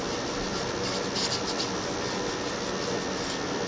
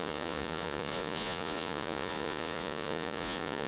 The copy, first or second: second